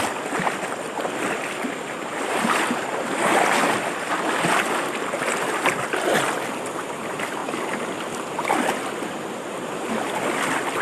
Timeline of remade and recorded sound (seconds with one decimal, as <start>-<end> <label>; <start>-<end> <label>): 0.0-10.8 recorded